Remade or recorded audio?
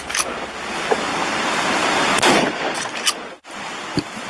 recorded